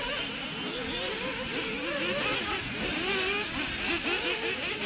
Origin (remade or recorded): recorded